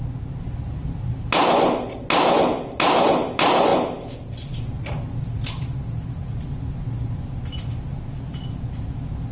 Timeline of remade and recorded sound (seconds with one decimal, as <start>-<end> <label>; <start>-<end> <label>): 0.0-9.3 recorded